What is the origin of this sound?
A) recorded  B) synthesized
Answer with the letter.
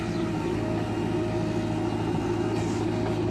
A